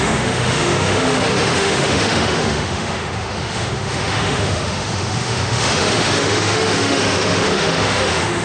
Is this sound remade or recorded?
remade